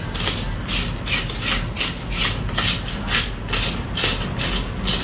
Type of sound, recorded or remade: recorded